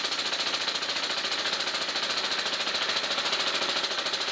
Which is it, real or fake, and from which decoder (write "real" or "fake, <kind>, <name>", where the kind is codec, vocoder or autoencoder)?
real